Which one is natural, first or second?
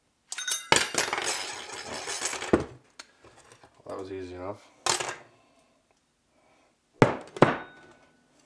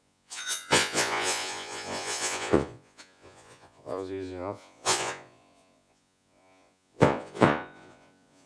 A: first